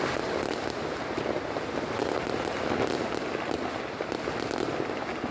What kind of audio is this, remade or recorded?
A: recorded